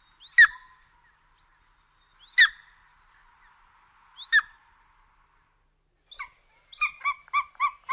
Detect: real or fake real